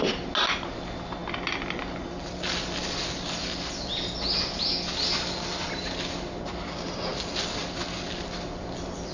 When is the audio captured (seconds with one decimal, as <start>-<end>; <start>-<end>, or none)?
0.0-9.1